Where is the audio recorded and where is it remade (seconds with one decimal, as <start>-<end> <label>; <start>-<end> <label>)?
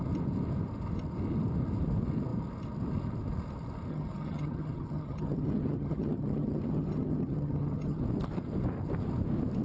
0.0-3.9 recorded; 3.9-8.0 remade; 8.0-9.6 recorded